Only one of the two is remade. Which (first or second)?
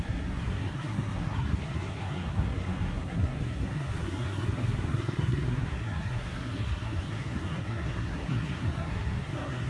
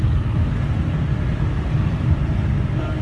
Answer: first